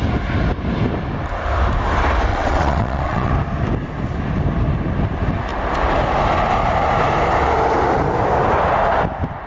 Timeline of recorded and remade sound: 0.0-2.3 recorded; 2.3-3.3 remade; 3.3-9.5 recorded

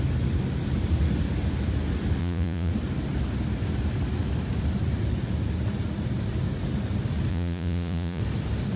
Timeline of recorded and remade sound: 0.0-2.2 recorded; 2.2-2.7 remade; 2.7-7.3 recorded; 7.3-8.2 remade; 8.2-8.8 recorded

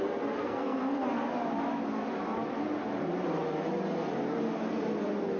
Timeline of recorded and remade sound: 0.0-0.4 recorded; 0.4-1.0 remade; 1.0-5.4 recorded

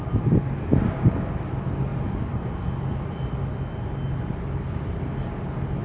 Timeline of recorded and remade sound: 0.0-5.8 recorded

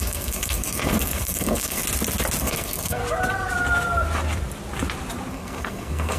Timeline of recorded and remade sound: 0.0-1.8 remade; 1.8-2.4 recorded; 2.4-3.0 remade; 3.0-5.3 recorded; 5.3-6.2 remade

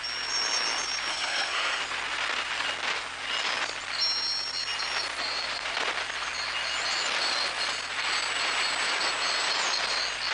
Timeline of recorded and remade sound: 0.0-1.1 recorded; 1.1-1.8 remade; 1.8-10.3 recorded